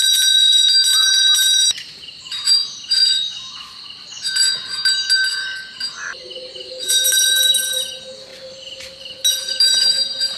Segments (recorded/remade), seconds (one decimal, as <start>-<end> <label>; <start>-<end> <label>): 0.0-2.6 remade; 2.6-6.9 recorded; 6.9-8.3 remade; 8.3-9.3 recorded; 9.3-10.4 remade